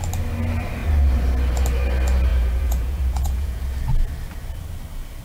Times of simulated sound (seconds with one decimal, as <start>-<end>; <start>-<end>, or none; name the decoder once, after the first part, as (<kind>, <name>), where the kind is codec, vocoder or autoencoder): 2.3-3.6 (vocoder, Vocos)